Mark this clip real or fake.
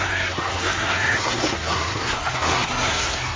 fake